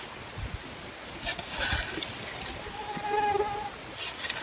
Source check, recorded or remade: recorded